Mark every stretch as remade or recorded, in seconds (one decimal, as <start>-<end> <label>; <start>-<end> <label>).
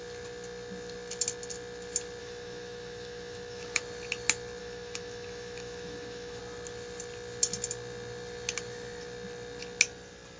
0.0-2.2 recorded; 2.2-3.8 remade; 3.8-4.6 recorded; 4.6-6.4 remade; 6.4-10.4 recorded